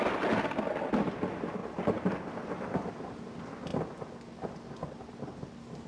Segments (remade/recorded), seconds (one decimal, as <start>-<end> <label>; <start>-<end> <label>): 0.0-5.9 recorded